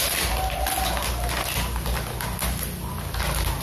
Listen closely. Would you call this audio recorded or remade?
recorded